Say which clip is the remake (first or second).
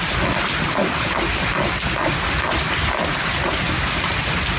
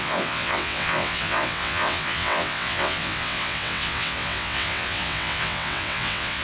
second